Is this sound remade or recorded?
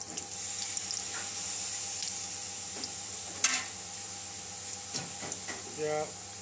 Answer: recorded